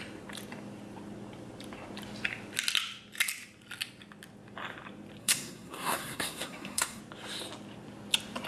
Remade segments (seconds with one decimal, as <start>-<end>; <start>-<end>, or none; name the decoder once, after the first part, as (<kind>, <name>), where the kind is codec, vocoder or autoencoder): 5.2-7.0 (codec, SNAC)